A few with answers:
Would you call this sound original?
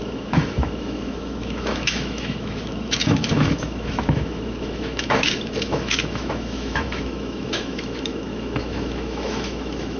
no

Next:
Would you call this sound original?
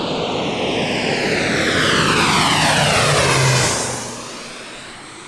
yes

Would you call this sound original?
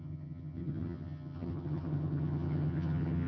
no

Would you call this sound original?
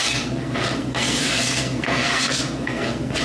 no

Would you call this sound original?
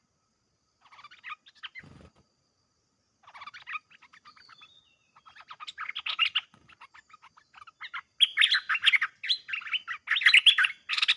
yes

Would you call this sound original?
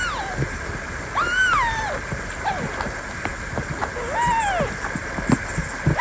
yes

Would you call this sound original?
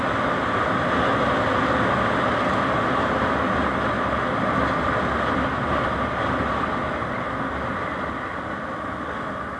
yes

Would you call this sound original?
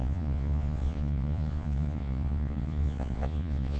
no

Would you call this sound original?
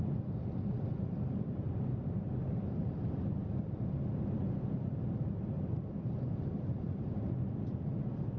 yes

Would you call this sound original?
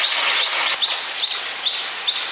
yes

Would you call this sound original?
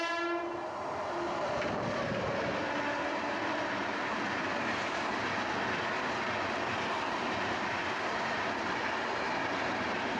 yes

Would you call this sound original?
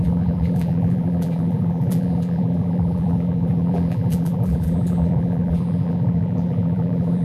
no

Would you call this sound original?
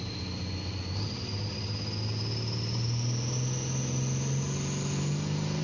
yes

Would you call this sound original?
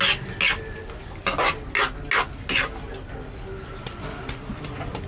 yes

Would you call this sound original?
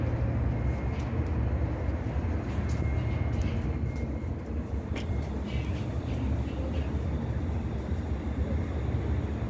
yes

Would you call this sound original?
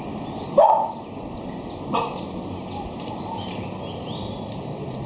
yes